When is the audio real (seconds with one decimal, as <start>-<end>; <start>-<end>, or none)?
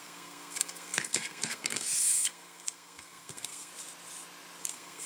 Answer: 3.7-4.6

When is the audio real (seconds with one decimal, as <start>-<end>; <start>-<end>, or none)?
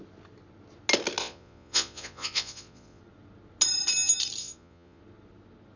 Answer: 0.0-1.2; 3.0-4.4; 5.0-5.8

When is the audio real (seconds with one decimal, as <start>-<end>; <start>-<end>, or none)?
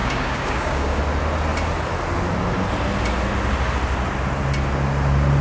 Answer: 1.0-5.4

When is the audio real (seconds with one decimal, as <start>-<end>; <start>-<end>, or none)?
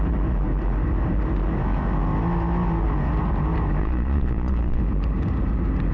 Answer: 0.0-3.8; 4.8-5.9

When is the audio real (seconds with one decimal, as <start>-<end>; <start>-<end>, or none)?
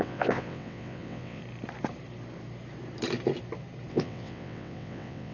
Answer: 1.4-3.9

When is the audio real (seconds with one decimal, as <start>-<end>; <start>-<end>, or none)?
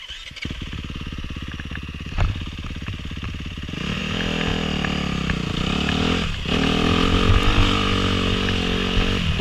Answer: 0.0-9.4